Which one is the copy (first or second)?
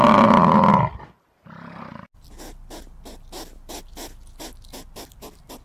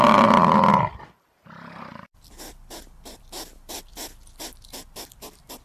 second